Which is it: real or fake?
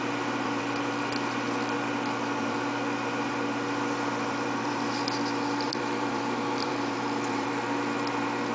fake